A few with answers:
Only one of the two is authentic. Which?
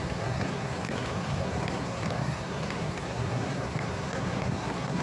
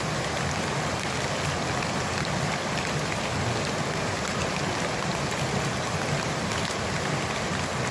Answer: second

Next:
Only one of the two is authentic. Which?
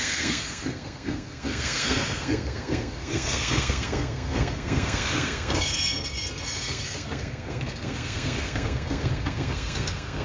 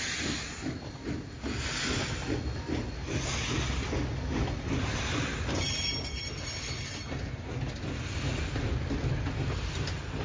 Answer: second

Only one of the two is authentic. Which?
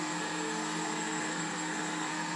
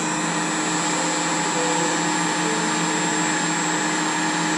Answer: second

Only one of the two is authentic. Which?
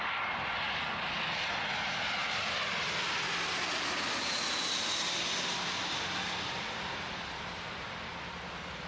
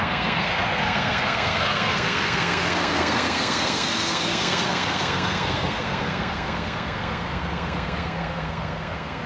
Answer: first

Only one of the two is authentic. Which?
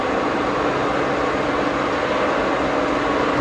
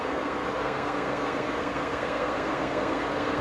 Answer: first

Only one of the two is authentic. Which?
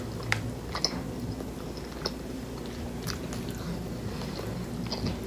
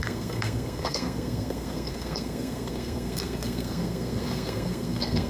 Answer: first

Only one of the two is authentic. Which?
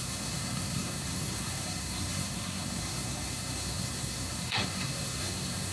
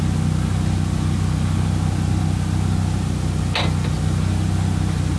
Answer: second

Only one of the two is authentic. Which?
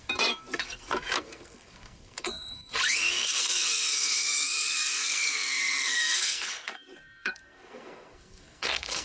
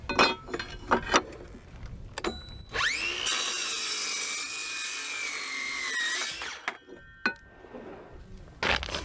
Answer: second